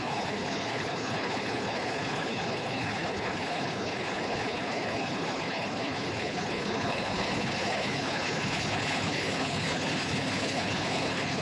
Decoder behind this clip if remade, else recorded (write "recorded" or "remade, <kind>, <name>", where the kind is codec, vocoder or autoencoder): remade, codec, HILCodec